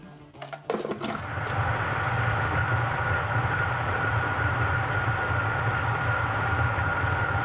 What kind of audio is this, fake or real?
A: real